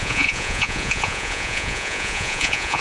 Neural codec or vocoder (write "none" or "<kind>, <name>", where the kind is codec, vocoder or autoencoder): vocoder, Vocos